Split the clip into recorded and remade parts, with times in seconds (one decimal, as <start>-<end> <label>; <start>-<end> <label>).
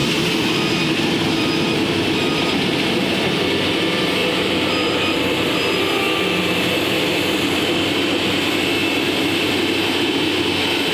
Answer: 0.0-4.2 recorded; 4.2-6.6 remade; 6.6-8.8 recorded; 8.8-9.5 remade; 9.5-10.9 recorded